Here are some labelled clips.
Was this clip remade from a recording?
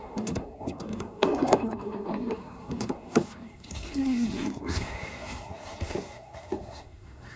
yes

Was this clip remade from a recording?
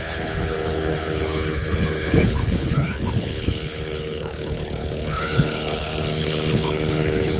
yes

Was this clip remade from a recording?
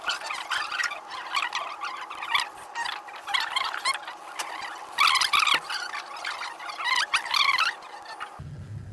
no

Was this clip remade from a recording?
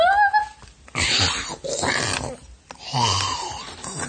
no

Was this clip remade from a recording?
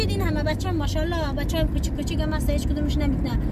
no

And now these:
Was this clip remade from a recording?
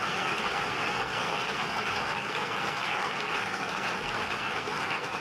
yes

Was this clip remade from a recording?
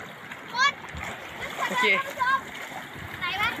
no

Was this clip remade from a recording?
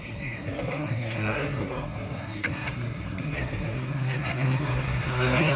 yes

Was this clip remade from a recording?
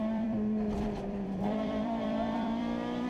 yes